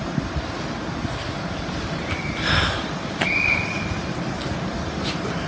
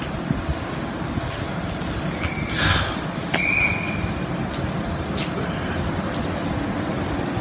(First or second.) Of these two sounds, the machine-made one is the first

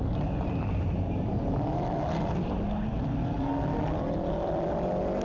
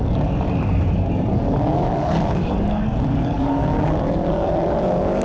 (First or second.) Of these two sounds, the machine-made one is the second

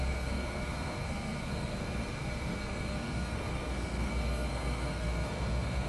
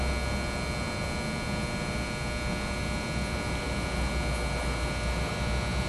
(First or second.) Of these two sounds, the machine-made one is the first